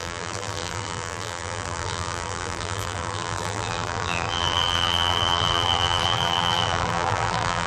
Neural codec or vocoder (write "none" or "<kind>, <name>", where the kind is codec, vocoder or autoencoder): vocoder, BigVGAN v2